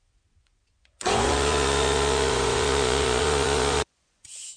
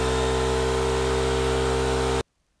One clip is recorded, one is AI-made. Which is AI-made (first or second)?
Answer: first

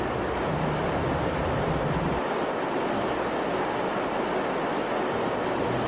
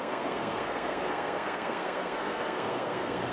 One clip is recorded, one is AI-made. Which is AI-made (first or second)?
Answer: second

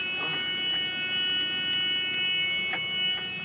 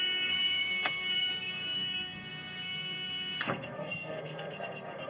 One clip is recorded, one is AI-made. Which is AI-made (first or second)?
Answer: second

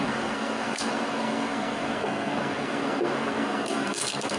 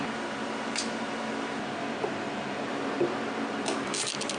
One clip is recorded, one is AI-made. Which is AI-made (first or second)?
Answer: first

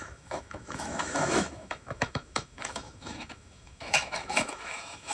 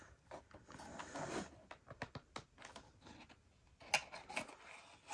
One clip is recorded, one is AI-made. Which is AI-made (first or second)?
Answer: first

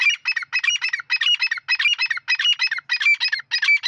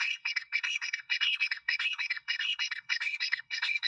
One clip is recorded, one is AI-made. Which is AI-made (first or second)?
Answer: second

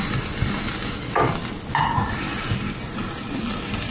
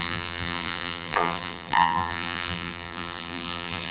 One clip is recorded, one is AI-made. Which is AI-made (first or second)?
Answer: second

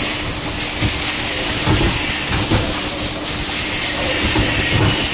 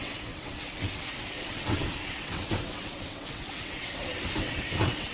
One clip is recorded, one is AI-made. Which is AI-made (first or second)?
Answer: second